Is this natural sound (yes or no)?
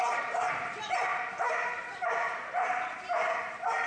no